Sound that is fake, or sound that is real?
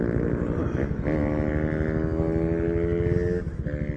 real